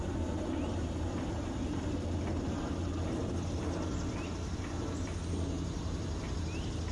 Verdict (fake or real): real